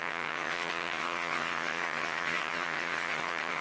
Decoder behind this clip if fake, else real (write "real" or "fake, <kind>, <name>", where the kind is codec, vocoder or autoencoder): fake, vocoder, HiFi-GAN